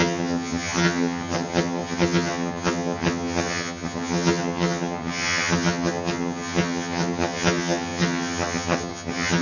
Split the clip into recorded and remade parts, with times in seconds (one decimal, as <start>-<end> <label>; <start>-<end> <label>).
0.0-9.4 remade